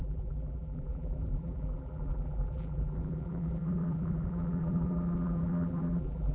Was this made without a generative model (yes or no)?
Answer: no